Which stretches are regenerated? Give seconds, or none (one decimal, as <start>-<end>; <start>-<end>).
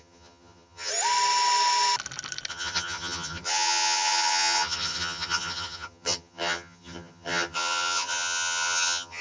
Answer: 0.0-0.9; 2.5-9.2